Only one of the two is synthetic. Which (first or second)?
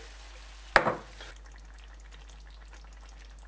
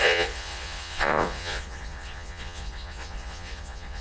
second